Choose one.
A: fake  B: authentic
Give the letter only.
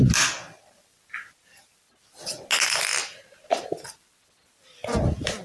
B